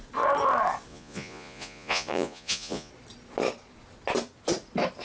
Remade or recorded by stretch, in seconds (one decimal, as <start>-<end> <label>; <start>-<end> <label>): 0.0-0.9 recorded; 0.9-2.9 remade; 2.9-5.0 recorded